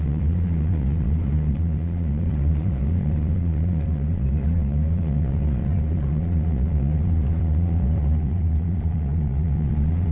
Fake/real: fake